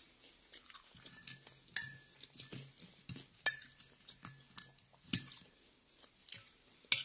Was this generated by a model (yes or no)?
no